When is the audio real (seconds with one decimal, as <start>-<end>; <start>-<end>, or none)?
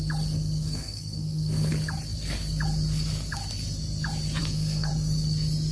0.0-0.6; 1.7-4.4; 4.9-5.7